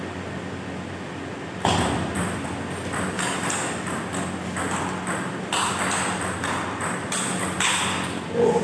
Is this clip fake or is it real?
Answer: real